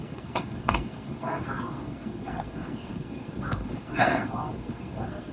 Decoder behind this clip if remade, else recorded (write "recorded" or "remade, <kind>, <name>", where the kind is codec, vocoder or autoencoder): remade, codec, SNAC